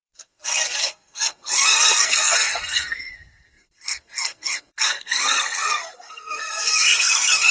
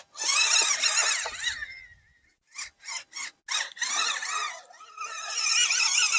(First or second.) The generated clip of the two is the first